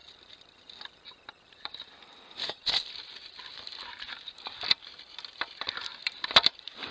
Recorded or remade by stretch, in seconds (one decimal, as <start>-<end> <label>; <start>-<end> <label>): 0.0-1.3 recorded; 1.3-6.9 remade